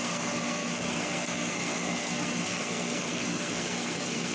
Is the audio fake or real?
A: fake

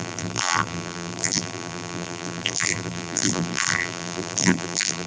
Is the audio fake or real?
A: fake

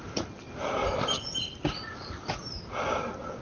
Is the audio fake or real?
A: real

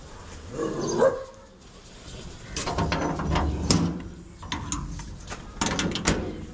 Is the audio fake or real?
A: real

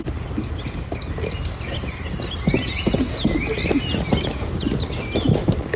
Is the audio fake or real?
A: real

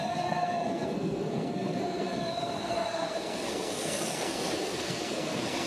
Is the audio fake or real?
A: fake